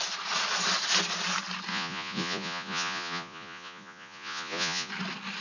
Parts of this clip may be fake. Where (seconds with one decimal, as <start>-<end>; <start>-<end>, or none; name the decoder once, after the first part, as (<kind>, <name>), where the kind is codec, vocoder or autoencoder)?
1.7-4.9 (vocoder, Vocos)